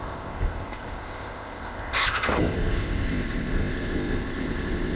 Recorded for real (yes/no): no